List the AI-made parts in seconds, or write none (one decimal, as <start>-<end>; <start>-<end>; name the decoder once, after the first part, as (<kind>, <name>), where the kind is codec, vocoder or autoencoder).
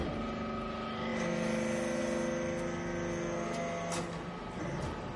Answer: none